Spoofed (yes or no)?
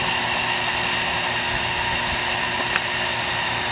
no